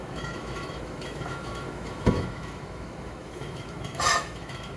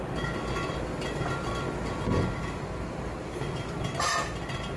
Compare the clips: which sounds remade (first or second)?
first